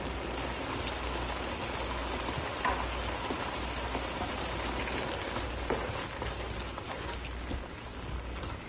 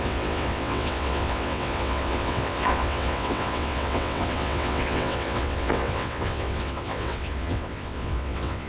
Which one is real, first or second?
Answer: first